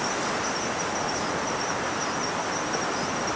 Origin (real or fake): real